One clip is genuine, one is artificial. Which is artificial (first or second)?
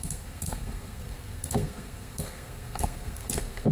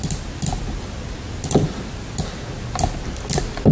first